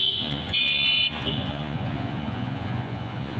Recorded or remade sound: remade